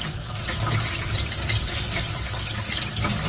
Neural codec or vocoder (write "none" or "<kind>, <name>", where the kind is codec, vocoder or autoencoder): none